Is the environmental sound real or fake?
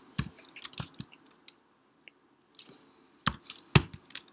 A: real